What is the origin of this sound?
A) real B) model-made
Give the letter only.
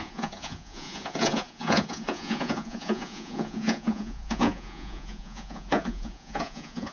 B